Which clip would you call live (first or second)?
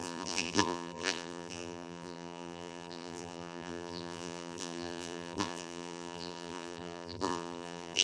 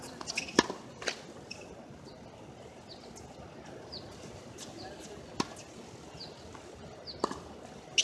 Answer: second